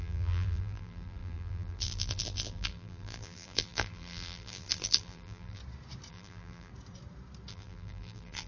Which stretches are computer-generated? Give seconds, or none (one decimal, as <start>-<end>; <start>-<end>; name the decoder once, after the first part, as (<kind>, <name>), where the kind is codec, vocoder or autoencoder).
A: 0.0-5.6 (vocoder, BigVGAN v2); 6.1-6.7; 7.5-8.5